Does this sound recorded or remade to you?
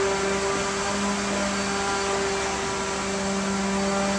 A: recorded